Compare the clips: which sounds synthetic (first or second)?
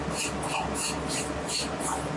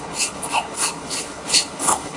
second